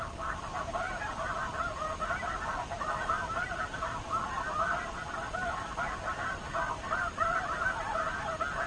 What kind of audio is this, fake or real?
real